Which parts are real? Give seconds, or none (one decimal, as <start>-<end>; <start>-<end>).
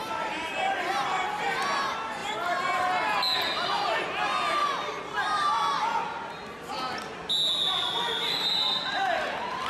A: 0.9-2.2; 2.9-9.7